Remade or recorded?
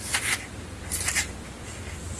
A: recorded